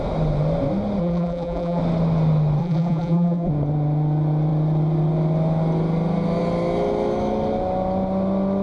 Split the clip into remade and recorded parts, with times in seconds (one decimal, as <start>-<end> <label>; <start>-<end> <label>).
0.0-1.0 recorded; 1.0-1.8 remade; 1.8-2.6 recorded; 2.6-3.5 remade; 3.5-8.6 recorded

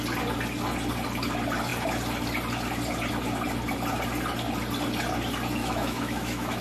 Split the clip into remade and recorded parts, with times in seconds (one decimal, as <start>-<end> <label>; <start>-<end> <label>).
0.0-5.6 recorded; 5.6-6.6 remade